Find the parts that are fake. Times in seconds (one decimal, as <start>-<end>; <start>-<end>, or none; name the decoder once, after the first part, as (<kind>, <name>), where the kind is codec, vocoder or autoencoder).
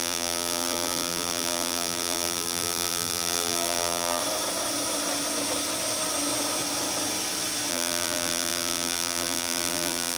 0.0-4.2 (vocoder, BigVGAN v2); 7.7-10.2